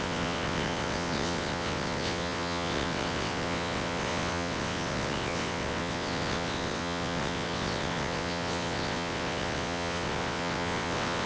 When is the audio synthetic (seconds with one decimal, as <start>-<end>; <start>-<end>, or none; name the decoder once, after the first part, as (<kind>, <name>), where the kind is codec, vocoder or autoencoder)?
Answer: 0.0-11.3 (vocoder, WaveNeXt)